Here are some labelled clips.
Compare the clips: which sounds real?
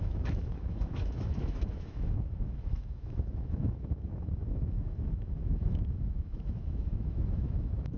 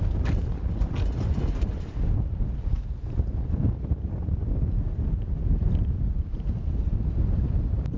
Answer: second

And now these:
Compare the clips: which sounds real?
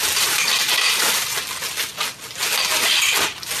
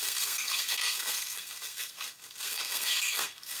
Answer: first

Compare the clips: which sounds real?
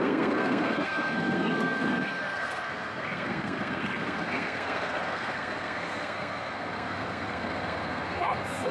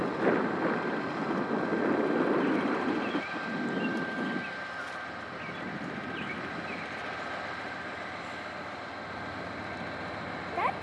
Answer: second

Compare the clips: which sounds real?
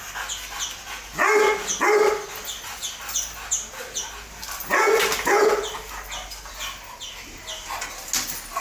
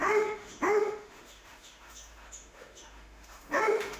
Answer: first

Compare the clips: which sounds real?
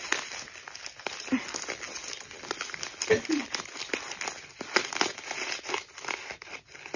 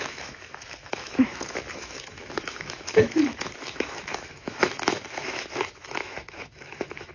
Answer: first